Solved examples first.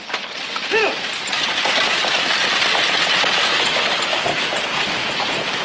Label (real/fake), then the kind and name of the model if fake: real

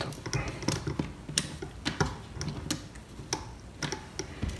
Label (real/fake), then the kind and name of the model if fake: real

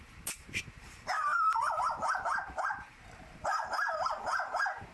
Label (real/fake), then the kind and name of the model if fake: fake, vocoder, BigVGAN v2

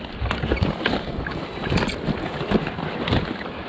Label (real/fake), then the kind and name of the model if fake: real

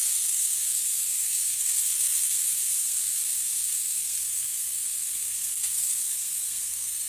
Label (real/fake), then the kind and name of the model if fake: fake, codec, SNAC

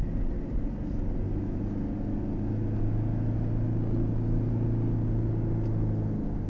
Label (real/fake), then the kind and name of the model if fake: real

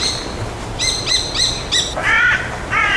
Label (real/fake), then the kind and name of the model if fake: real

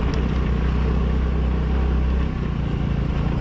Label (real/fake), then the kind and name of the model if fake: real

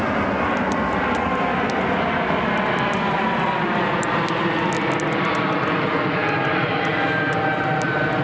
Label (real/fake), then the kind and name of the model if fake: real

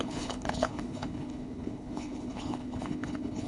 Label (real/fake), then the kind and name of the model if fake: fake, codec, HILCodec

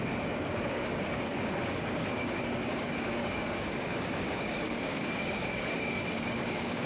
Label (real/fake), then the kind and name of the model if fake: fake, codec, DAC